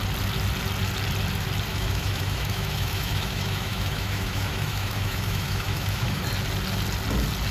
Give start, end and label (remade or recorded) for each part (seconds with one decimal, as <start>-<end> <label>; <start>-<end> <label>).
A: 0.0-1.7 recorded; 1.7-6.2 remade; 6.2-7.5 recorded

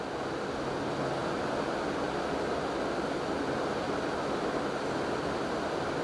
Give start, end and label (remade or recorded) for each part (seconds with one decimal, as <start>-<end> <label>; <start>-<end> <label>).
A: 0.0-6.0 recorded